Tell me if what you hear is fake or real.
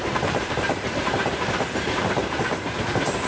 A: fake